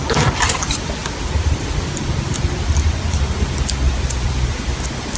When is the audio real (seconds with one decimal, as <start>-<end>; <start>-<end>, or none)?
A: none